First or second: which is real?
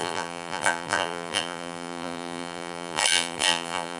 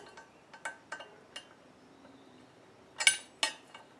second